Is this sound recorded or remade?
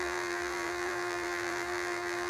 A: remade